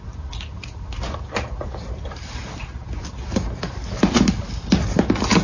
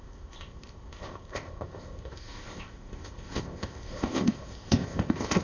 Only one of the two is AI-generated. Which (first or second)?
second